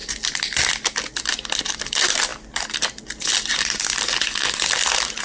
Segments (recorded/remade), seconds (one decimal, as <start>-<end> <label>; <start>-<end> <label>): 0.0-1.6 recorded; 1.6-2.3 remade; 2.3-3.0 recorded; 3.0-5.2 remade